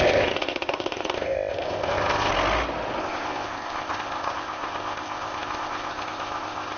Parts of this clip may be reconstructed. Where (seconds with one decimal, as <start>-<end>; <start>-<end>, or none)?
0.0-2.3; 3.0-6.8